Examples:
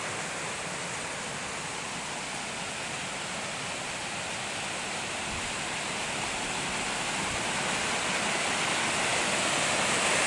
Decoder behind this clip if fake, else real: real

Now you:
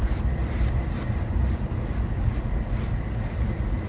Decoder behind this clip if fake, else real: real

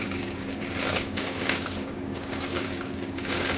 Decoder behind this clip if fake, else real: fake, codec, DAC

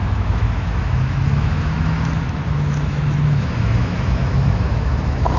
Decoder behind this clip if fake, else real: fake, autoencoder, DAC-VAE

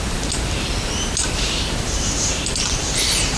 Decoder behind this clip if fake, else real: fake, vocoder, BigVGAN v2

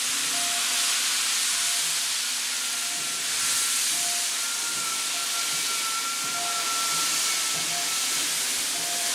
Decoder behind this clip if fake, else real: real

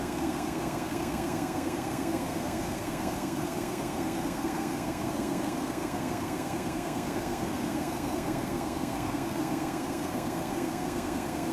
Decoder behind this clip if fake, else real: fake, codec, SNAC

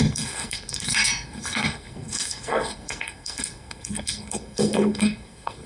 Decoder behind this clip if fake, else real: fake, codec, SNAC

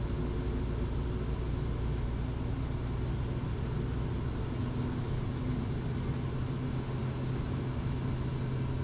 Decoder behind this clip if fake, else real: real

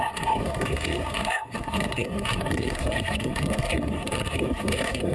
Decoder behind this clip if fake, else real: fake, codec, SNAC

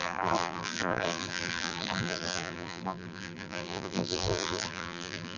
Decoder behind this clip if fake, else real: fake, vocoder, BigVGAN v2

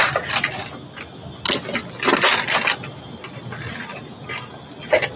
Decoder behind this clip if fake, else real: real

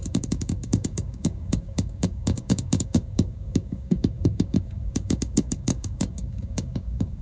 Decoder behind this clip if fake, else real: fake, codec, DAC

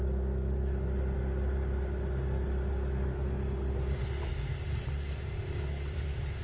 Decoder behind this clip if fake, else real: real